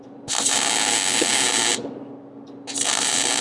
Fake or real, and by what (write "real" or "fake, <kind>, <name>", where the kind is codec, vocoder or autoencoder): real